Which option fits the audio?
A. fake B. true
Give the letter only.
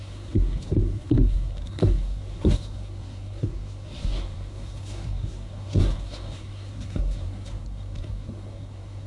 A